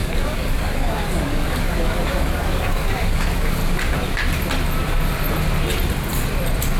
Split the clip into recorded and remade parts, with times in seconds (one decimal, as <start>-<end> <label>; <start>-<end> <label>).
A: 0.0-3.6 remade; 3.6-6.8 recorded